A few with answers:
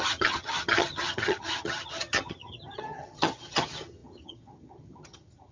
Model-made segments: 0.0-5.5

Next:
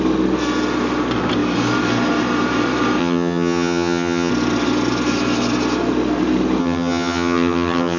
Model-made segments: 3.0-4.3; 6.6-8.0

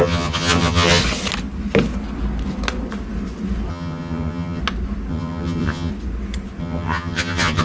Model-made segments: 0.0-1.0; 3.7-4.6; 5.1-5.9; 6.6-7.6

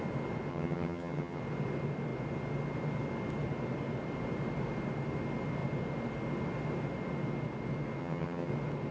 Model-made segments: 0.5-1.4; 8.0-8.5

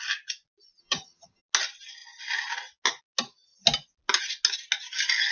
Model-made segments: 0.8-1.4